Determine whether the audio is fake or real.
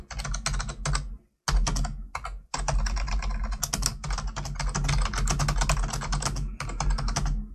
real